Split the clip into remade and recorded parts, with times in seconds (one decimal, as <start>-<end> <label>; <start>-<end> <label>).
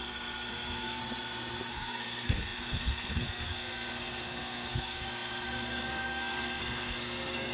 0.0-1.0 remade; 1.0-1.7 recorded; 1.7-7.5 remade